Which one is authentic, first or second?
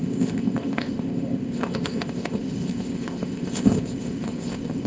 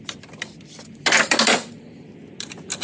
second